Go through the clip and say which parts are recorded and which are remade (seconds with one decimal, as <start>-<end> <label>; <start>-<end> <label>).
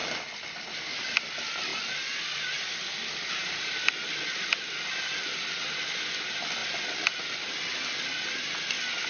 0.0-6.6 recorded; 6.6-8.3 remade; 8.3-9.1 recorded